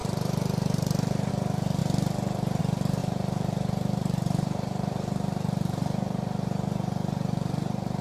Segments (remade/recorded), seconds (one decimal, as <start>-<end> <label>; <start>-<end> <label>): 0.0-1.3 remade; 1.3-3.0 recorded; 3.0-8.0 remade